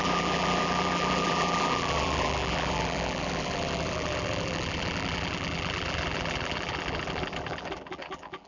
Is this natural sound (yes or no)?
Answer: no